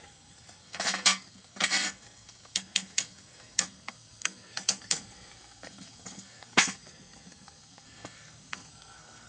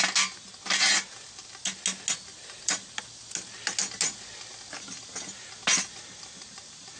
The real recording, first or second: second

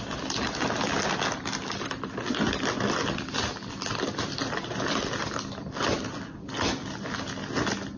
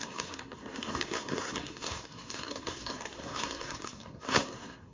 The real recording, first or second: first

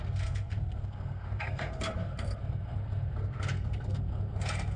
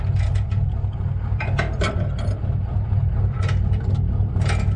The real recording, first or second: second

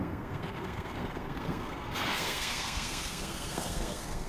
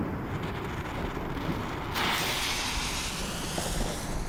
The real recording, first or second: second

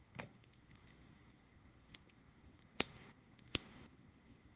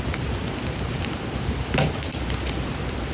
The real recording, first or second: second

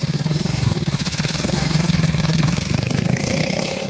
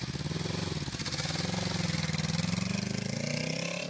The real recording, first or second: second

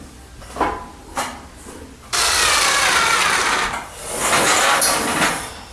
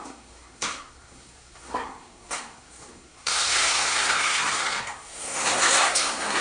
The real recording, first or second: first